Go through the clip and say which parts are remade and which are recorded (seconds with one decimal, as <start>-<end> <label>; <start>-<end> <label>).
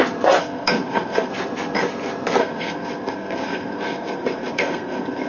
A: 0.0-0.4 recorded; 0.4-1.3 remade; 1.3-2.4 recorded; 2.4-5.3 remade